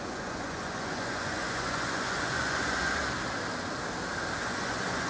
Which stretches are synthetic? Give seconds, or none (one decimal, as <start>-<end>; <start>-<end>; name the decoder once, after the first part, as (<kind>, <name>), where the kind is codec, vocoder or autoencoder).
0.0-3.0 (vocoder, Vocos); 4.4-5.1